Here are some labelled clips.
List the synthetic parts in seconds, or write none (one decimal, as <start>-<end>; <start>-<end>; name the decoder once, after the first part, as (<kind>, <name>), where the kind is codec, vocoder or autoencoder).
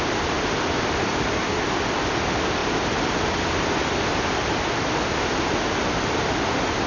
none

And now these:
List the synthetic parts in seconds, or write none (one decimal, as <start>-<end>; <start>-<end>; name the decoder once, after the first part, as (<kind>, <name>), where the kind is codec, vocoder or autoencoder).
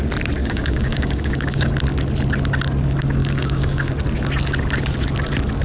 0.4-1.7 (codec, DAC); 3.2-3.9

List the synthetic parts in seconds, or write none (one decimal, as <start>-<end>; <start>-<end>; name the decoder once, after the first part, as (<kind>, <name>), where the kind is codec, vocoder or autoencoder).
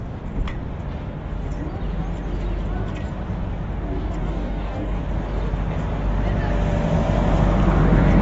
4.2-5.0 (codec, DAC)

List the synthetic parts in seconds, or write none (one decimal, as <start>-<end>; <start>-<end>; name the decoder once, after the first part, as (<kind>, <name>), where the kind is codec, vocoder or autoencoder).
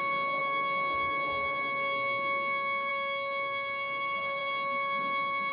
none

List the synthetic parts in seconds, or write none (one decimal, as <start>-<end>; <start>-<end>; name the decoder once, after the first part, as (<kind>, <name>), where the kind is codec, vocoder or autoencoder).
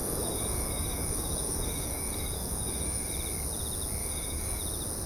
0.0-3.1 (codec, DAC); 4.0-4.6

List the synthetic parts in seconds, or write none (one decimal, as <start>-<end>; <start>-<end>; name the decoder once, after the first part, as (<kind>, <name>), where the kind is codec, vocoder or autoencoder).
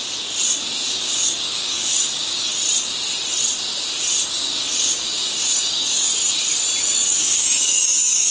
0.9-2.5 (codec, DAC); 4.3-6.1; 6.8-8.3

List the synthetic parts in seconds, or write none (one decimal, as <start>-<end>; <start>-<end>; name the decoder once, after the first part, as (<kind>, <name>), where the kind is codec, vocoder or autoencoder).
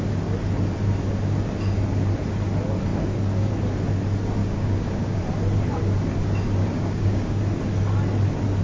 4.4-5.2 (codec, DAC); 6.6-7.4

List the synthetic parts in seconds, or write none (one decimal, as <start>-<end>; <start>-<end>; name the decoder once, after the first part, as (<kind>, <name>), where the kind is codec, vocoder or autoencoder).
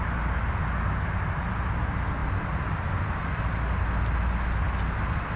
none